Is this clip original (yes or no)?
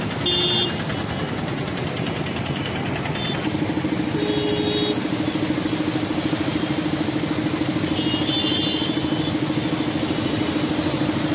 yes